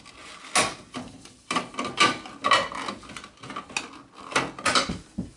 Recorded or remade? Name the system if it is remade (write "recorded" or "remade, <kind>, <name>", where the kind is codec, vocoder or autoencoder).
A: recorded